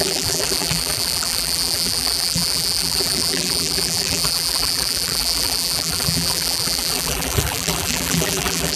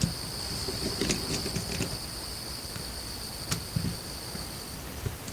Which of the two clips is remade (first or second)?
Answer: first